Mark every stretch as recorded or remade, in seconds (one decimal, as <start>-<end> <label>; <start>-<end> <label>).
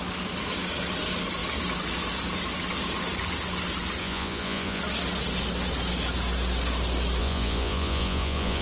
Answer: 0.0-4.0 recorded; 4.0-4.8 remade; 4.8-7.2 recorded; 7.2-8.6 remade